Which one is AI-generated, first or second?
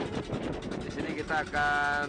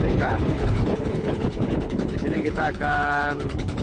second